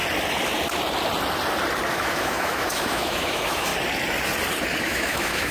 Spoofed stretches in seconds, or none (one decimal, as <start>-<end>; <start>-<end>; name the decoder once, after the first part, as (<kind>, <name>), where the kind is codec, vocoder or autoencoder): 1.9-3.7 (autoencoder, DAC-VAE); 4.8-5.5